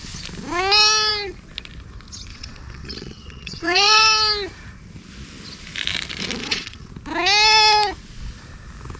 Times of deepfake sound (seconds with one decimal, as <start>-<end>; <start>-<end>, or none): 2.3-4.0; 6.4-6.9